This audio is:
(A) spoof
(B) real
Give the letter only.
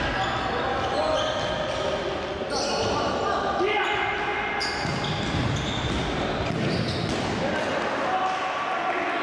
B